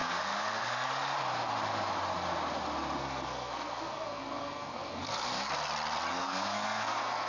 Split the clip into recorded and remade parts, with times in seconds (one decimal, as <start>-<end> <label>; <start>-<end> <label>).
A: 0.0-0.9 remade; 0.9-3.0 recorded; 3.0-5.5 remade; 5.5-6.1 recorded; 6.1-7.3 remade